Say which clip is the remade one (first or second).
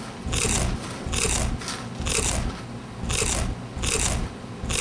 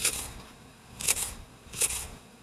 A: second